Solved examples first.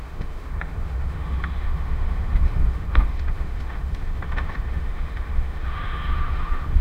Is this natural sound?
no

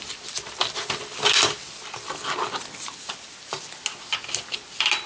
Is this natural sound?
yes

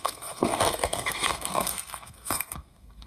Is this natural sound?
no